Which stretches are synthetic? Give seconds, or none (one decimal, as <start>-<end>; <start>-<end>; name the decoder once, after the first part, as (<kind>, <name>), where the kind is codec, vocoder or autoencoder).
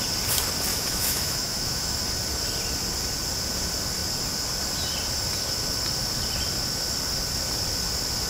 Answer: 0.7-2.0 (autoencoder, DAC-VAE)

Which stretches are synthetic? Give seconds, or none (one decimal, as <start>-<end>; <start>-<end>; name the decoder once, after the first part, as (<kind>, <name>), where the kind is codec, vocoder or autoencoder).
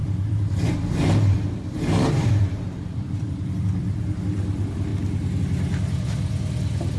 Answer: 0.0-4.9 (vocoder, BigVGAN v2); 5.4-7.0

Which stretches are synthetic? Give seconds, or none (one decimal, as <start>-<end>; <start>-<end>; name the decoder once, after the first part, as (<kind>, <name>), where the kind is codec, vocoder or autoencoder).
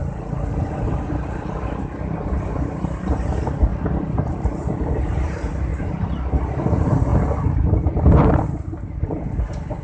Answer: 0.0-3.7 (vocoder, BigVGAN v2); 4.3-5.7; 6.3-7.1; 8.1-9.8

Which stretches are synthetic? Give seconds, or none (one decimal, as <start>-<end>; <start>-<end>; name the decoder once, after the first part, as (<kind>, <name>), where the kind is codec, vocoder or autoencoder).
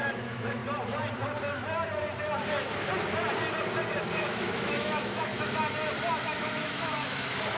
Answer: 0.0-0.6 (autoencoder, DAC-VAE); 4.2-5.3; 6.2-7.6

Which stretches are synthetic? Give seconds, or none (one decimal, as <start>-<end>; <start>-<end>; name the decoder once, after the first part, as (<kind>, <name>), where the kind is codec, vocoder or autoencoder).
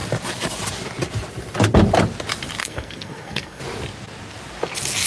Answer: 2.6-3.6 (codec, SNAC)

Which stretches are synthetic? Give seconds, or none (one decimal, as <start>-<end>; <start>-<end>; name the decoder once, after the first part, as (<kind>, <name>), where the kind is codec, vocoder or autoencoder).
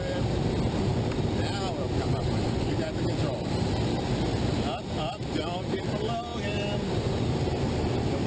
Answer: none